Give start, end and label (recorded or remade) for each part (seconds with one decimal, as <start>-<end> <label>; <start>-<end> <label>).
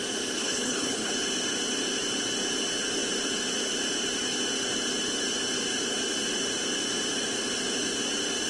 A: 0.0-0.4 recorded; 0.4-1.1 remade; 1.1-8.5 recorded